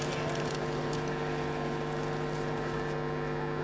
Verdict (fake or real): real